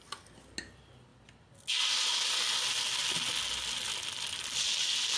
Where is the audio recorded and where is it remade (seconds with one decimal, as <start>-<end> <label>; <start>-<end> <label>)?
0.0-5.2 recorded

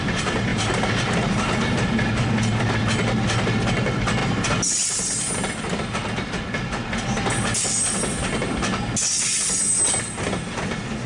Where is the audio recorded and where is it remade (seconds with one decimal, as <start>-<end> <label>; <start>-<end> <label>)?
0.0-0.5 recorded; 0.5-2.6 remade; 2.6-11.1 recorded

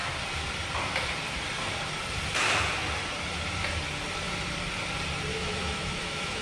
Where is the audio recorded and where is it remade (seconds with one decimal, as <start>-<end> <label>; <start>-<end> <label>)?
0.0-5.3 recorded; 5.3-6.4 remade

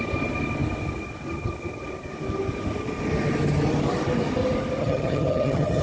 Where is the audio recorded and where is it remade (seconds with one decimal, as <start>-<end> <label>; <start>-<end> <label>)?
0.0-4.8 recorded; 4.8-5.8 remade

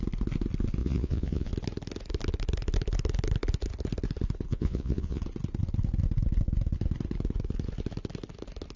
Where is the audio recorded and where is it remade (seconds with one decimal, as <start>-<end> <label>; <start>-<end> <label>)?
0.0-0.8 recorded; 0.8-1.5 remade; 1.5-4.5 recorded; 4.5-5.2 remade; 5.2-8.8 recorded

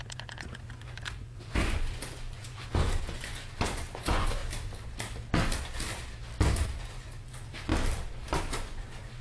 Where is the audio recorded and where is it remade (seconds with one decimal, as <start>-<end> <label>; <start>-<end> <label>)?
0.0-4.4 remade; 4.4-6.8 recorded; 6.8-7.7 remade; 7.7-8.4 recorded; 8.4-9.2 remade

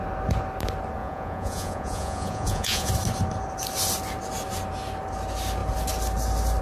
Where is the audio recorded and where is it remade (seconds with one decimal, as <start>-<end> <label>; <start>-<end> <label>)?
0.0-1.0 recorded; 1.0-2.9 remade; 2.9-6.6 recorded

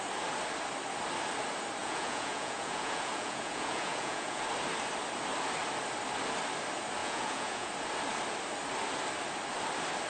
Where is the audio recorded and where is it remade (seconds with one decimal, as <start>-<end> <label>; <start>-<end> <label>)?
0.0-1.8 recorded; 1.8-4.4 remade; 4.4-7.0 recorded; 7.0-7.7 remade; 7.7-10.1 recorded